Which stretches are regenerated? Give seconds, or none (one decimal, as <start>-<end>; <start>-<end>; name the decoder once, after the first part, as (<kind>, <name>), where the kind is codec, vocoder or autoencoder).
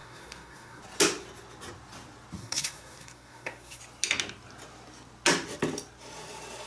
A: 0.0-0.8 (codec, SNAC); 2.4-3.8